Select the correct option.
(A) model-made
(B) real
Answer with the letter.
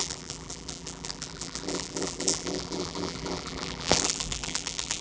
A